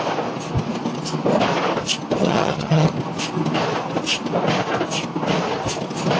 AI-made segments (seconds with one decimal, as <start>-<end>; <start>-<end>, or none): 2.2-2.9